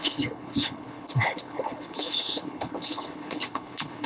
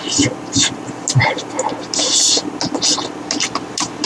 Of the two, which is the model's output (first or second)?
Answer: first